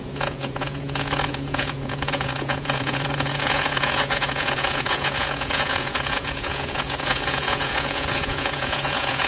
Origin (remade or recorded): remade